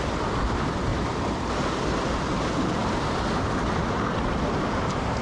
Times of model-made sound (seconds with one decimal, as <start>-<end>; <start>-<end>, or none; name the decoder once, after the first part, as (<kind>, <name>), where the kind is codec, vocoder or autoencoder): none